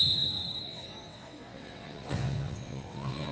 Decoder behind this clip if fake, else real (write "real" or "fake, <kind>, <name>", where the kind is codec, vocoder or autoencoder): fake, vocoder, WaveNeXt